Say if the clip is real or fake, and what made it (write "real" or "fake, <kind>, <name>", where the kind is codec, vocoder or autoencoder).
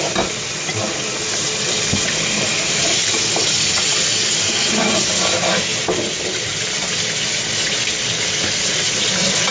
real